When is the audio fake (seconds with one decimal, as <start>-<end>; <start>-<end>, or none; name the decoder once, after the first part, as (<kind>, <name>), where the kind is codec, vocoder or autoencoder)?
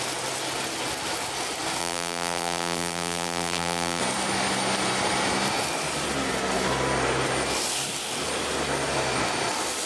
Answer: 1.8-4.0 (vocoder, BigVGAN v2)